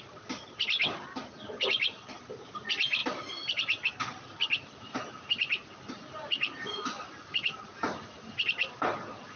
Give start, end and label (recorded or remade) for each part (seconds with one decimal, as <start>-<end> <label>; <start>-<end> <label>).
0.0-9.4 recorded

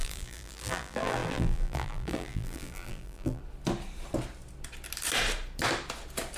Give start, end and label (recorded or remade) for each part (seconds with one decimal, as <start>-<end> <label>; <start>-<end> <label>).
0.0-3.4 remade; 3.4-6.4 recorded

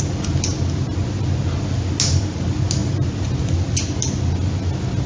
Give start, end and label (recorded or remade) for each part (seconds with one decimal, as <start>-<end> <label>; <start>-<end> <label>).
0.0-5.1 recorded